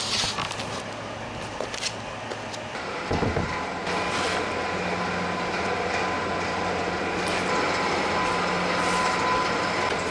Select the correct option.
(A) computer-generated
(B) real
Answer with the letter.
B